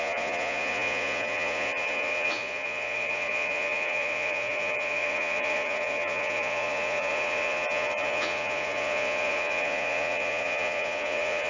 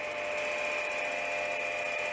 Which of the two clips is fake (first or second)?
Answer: first